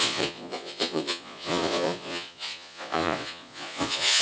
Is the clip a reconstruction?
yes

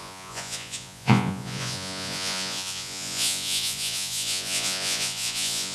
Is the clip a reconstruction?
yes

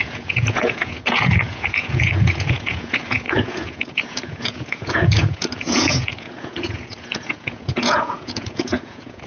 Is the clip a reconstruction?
yes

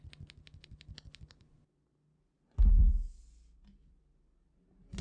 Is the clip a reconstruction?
no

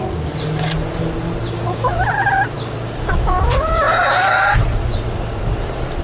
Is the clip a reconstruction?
no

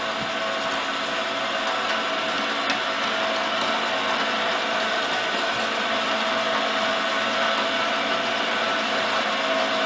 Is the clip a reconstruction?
no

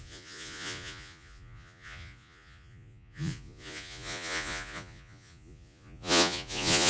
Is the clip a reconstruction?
yes